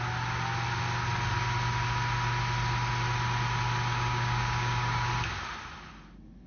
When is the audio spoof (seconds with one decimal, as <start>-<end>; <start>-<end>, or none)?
3.9-5.1

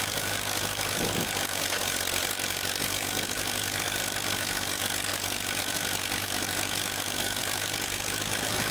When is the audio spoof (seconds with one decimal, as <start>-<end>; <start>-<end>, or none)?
0.0-1.8; 2.3-8.7

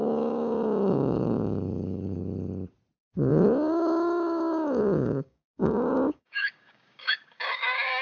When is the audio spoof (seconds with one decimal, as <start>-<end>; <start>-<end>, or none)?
0.0-2.2; 3.3-8.0

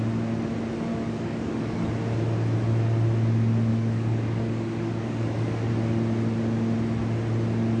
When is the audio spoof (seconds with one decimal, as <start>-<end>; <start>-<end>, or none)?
0.9-1.9; 3.7-5.7

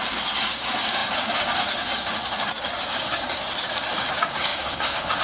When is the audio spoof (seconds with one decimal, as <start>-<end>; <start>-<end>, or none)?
0.0-5.2

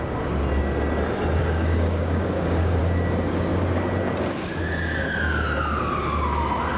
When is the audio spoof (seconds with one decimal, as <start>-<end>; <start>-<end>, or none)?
1.4-2.8

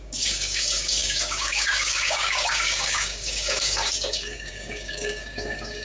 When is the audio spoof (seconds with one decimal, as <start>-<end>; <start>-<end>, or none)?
0.0-5.8